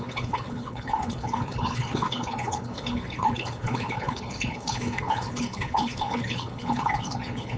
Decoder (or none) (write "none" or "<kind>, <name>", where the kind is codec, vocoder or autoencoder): codec, HILCodec